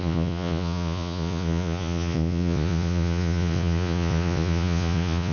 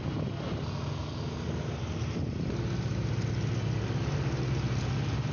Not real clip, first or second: first